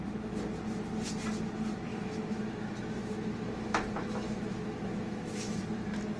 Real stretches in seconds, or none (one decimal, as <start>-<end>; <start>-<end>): 0.0-1.9; 5.6-6.2